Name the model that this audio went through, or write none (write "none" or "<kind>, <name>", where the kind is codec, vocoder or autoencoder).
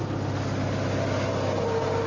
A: none